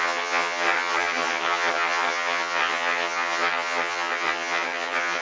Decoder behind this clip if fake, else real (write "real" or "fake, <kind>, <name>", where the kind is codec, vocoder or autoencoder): fake, vocoder, HiFi-GAN